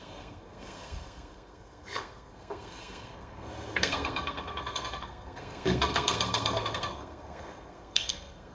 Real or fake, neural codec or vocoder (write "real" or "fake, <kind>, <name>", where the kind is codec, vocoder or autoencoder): fake, codec, SNAC